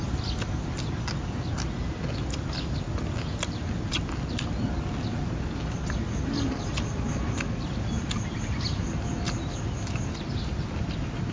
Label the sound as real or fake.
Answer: real